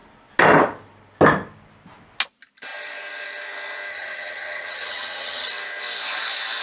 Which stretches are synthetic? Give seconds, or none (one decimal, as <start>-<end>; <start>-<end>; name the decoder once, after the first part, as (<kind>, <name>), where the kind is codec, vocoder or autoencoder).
3.9-5.5 (vocoder, HiFi-GAN)